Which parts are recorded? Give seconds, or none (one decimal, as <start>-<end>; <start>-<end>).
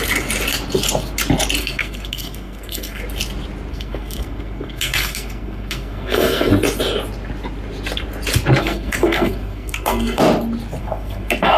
0.0-1.6; 3.0-3.7; 6.5-8.6; 10.2-10.8